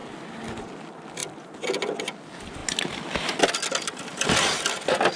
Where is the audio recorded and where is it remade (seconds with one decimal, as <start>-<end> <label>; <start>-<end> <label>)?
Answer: 0.0-5.2 recorded